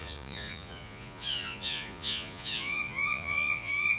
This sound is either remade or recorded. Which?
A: remade